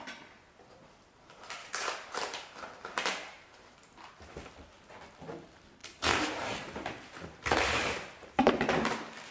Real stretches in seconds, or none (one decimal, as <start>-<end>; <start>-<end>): 0.0-1.6; 4.4-5.8; 8.5-9.3